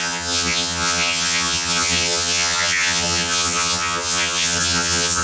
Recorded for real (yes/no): no